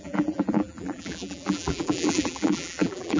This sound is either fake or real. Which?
fake